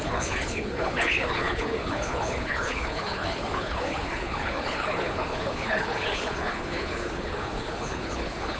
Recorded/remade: remade